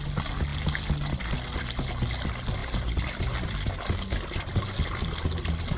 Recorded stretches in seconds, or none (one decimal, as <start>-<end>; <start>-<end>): 0.0-5.8